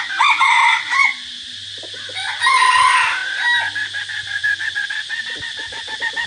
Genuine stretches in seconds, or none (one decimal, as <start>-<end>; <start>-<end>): 0.0-4.4; 4.9-6.3